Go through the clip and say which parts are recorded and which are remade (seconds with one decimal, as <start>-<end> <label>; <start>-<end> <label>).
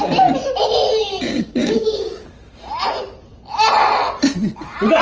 0.0-1.0 recorded; 1.0-2.2 remade; 2.2-5.0 recorded